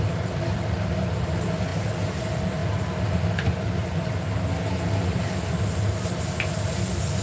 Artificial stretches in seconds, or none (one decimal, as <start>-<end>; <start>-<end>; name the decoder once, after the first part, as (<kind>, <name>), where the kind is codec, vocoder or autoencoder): none